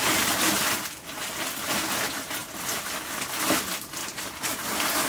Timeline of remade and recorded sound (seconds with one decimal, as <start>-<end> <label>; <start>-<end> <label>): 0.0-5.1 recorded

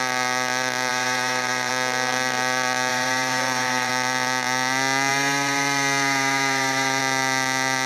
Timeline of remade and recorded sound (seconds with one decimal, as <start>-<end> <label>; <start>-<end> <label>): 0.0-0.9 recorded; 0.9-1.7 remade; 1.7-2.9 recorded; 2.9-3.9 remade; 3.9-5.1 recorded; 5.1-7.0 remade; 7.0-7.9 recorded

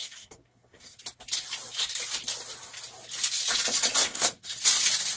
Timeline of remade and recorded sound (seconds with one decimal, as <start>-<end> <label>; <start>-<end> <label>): 0.0-1.0 remade; 1.0-4.0 recorded; 4.0-4.6 remade; 4.6-5.2 recorded